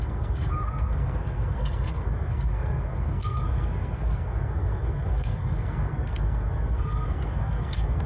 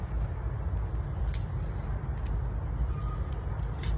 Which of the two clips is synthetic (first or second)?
first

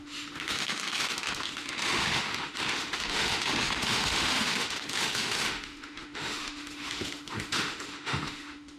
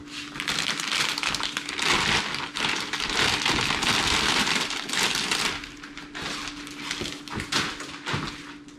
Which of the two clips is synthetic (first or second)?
first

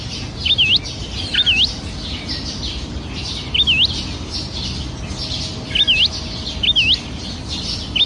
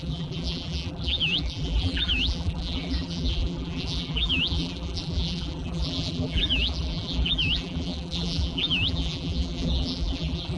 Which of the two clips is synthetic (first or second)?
second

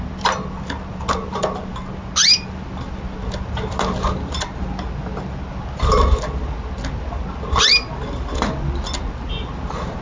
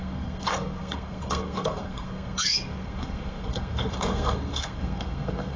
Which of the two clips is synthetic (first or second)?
second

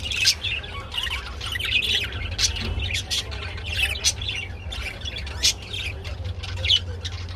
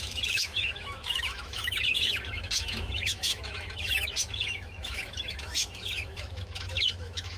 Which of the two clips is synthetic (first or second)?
second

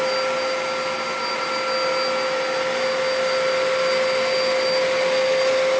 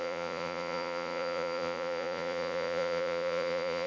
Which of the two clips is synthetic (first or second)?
second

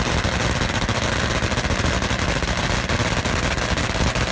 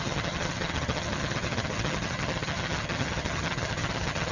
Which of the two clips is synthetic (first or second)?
second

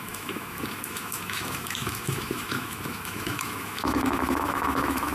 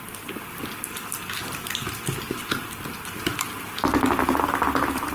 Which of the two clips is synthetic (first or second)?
first